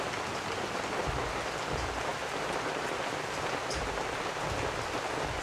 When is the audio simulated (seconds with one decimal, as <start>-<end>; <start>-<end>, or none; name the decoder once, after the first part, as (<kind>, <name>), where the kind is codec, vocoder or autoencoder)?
none